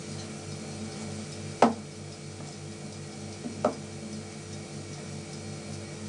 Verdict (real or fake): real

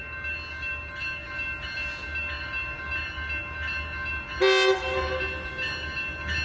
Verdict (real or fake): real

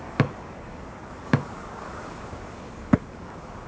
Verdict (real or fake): fake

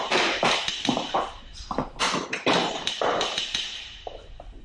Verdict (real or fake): fake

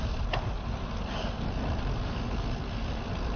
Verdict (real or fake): real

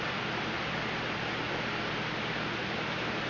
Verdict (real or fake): real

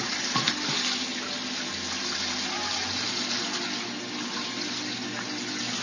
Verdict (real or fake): real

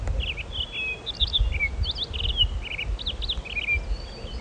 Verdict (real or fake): real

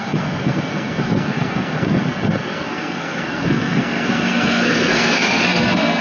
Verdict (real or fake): fake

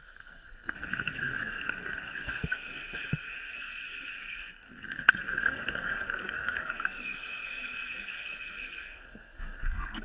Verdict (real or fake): fake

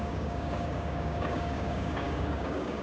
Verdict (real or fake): fake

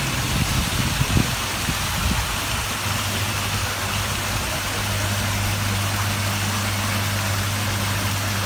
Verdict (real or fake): real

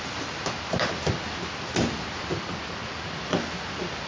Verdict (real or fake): real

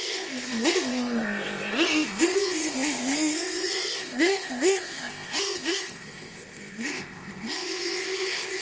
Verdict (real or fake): fake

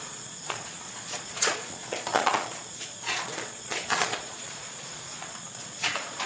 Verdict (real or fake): fake